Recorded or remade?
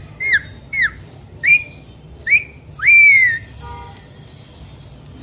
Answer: recorded